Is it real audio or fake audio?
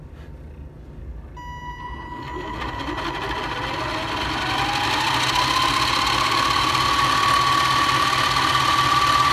real